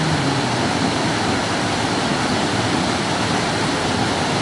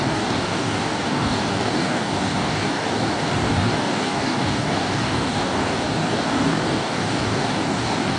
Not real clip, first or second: second